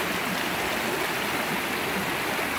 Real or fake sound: real